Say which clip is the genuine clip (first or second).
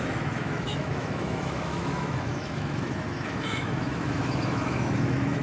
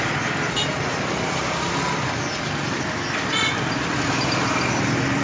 second